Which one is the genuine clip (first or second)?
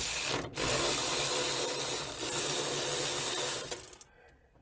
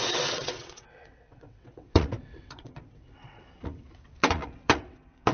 first